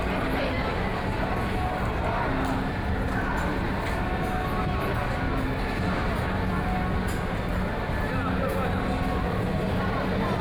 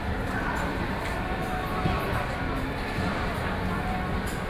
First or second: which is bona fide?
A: first